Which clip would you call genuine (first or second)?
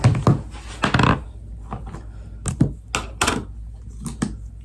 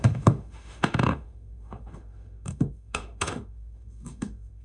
first